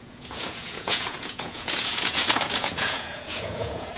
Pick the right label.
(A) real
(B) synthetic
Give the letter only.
B